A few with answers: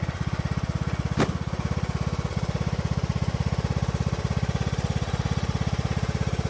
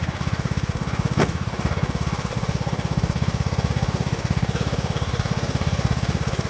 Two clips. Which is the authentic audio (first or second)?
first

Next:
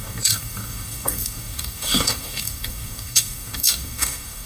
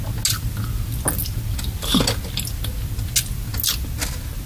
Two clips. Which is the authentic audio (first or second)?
second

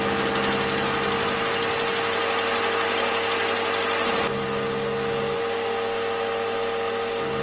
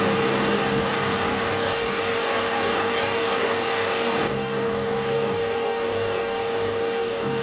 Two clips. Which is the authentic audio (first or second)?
first